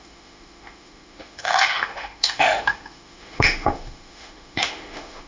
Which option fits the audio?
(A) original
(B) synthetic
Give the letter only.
B